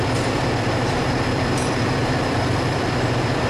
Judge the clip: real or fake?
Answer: fake